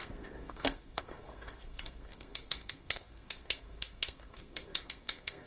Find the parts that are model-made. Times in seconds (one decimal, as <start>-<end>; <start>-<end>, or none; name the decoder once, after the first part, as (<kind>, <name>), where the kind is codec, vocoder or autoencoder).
0.0-5.5 (codec, SNAC)